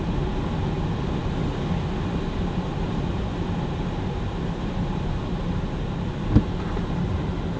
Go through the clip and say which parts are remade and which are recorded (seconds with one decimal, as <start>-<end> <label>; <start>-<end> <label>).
0.0-7.6 recorded